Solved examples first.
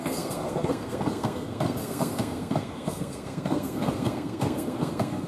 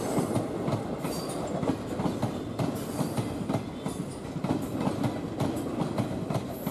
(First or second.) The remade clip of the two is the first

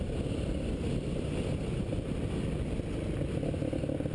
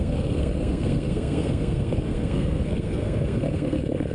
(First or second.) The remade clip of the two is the second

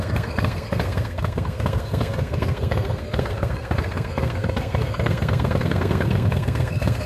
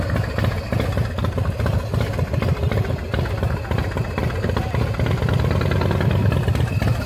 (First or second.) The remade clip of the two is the first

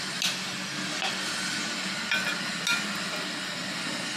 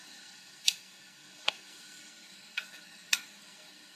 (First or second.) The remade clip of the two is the second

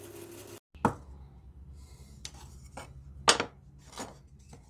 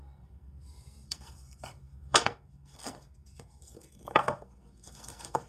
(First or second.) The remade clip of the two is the second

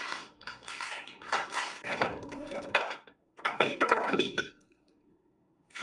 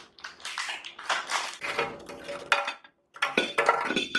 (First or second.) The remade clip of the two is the first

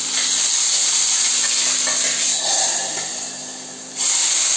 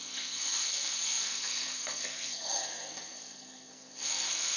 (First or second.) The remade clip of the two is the second